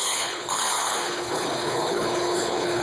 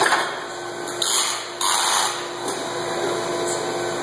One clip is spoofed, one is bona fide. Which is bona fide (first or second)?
second